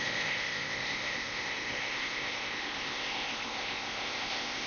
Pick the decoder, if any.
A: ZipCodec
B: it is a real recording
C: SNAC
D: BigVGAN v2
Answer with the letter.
A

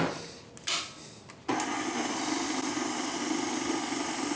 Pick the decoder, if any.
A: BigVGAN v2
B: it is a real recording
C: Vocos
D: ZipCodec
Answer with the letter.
B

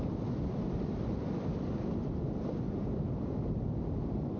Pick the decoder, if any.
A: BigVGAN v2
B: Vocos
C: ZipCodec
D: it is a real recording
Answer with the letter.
D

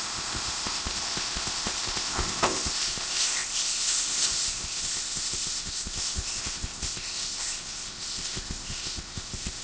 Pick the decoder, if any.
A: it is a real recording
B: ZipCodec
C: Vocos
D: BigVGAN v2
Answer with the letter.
B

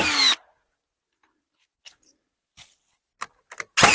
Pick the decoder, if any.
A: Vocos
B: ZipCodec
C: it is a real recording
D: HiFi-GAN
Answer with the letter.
C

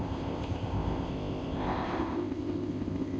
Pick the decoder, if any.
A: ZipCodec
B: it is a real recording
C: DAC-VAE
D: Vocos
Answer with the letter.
A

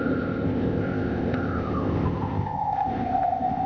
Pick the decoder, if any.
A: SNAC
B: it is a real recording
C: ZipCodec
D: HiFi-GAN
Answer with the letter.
C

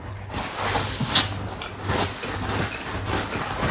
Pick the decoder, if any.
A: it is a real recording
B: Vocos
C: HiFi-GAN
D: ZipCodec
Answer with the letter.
A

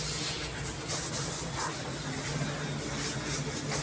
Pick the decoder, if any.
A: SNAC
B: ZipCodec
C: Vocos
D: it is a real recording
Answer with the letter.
D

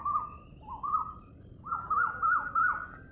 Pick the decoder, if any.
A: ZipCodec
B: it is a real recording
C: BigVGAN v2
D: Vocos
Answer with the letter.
B